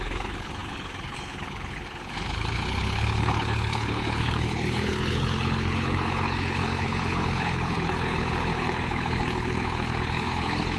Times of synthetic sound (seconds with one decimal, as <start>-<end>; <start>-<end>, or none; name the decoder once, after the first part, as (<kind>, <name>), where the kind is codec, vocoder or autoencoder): 0.0-10.8 (codec, HILCodec)